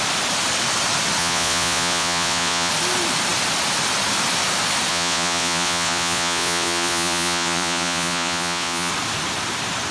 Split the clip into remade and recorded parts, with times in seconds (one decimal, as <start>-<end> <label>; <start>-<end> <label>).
0.0-1.2 recorded; 1.2-2.7 remade; 2.7-4.9 recorded; 4.9-8.9 remade; 8.9-9.9 recorded